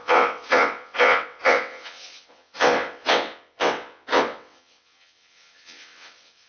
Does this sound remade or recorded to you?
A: remade